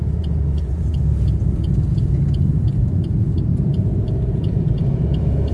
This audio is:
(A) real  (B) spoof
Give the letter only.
B